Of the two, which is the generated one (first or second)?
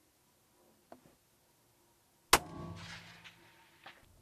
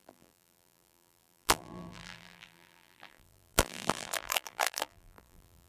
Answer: second